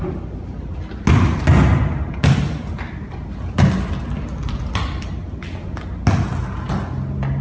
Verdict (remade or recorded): recorded